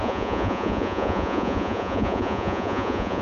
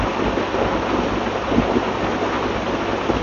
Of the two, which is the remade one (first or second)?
first